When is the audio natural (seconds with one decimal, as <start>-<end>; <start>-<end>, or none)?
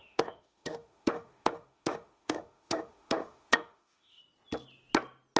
4.2-5.4